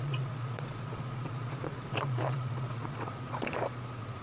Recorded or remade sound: remade